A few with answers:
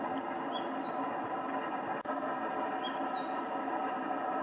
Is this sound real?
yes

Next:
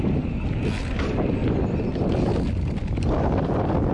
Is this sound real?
yes